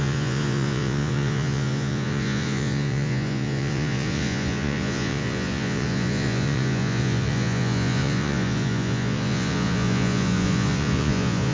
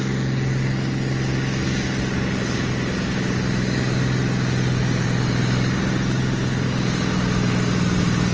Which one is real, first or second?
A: second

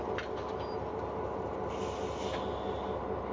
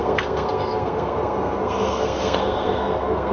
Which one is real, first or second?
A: first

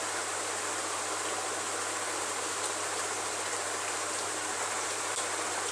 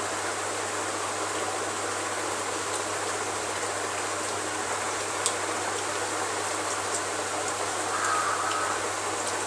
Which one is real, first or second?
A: second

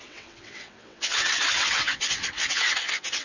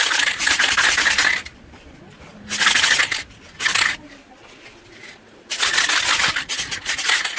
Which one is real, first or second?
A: second